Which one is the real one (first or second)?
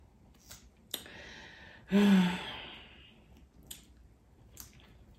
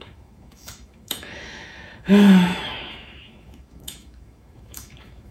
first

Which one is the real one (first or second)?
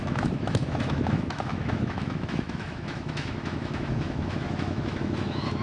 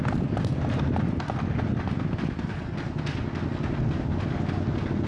second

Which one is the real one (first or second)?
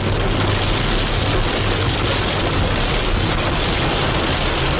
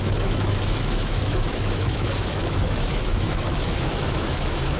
first